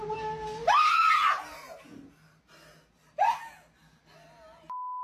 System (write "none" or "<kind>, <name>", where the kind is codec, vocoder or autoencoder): none